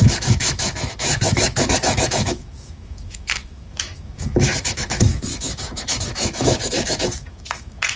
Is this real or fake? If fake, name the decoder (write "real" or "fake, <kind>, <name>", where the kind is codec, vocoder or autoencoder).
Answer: fake, autoencoder, DAC-VAE